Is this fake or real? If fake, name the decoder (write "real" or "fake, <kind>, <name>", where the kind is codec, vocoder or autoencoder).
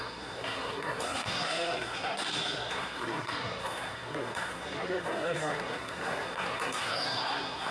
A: fake, codec, SNAC